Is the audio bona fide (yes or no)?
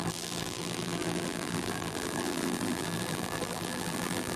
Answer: no